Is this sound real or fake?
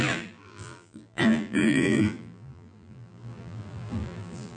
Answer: fake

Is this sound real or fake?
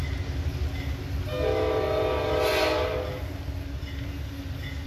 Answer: real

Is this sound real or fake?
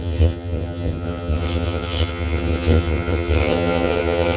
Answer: fake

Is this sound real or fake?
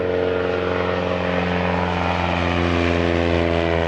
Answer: real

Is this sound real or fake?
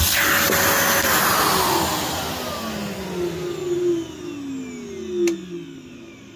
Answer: real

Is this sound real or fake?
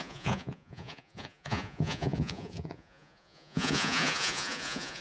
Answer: fake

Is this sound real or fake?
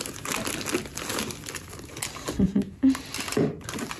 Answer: real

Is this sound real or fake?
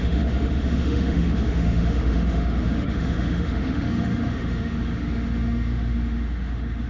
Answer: fake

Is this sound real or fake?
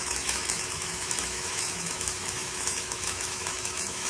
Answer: fake